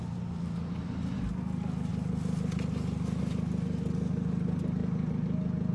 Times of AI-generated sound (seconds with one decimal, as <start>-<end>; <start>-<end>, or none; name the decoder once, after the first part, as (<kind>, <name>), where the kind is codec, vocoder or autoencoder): none